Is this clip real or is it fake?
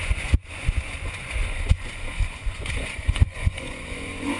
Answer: fake